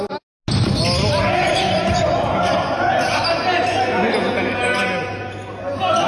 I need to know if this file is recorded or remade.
recorded